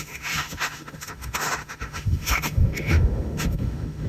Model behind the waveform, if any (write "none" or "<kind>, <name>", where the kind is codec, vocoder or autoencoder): autoencoder, DAC-VAE